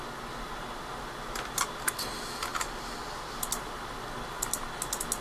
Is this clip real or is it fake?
real